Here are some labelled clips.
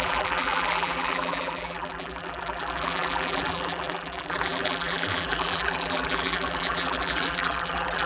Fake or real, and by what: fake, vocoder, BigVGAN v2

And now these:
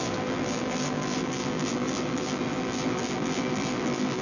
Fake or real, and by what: fake, vocoder, BigVGAN v2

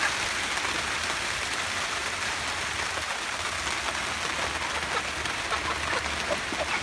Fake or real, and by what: real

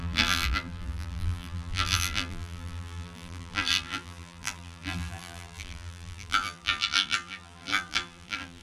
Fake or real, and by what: fake, vocoder, BigVGAN v2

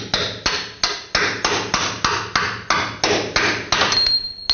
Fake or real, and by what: real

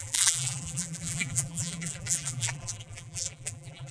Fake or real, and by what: fake, vocoder, BigVGAN v2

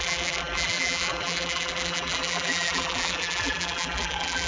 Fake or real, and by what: fake, vocoder, BigVGAN v2